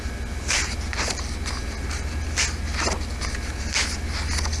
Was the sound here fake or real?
real